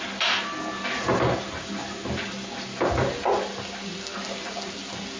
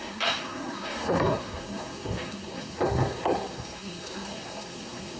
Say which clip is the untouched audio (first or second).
first